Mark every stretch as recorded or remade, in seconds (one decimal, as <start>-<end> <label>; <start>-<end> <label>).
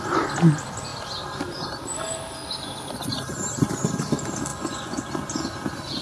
0.0-4.5 recorded; 4.5-5.1 remade; 5.1-6.0 recorded